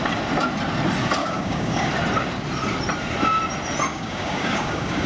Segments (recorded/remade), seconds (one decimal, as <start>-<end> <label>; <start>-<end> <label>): 0.0-1.2 recorded; 1.2-1.9 remade; 1.9-3.9 recorded; 3.9-5.1 remade